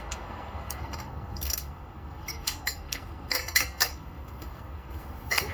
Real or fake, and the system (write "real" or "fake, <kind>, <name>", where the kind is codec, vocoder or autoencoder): fake, codec, SNAC